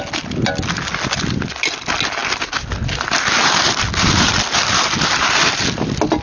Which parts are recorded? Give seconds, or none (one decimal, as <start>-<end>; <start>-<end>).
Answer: 0.0-6.2